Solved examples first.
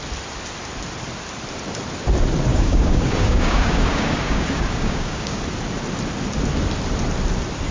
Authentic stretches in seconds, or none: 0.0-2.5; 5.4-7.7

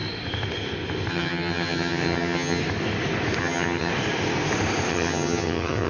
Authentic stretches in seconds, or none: 0.0-1.1; 2.6-3.4; 3.9-4.9